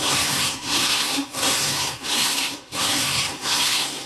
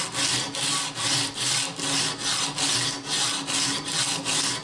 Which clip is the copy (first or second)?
first